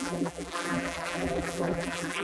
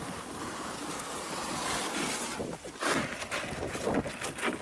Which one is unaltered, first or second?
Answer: second